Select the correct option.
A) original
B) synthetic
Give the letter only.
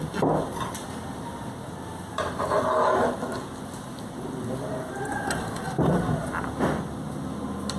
A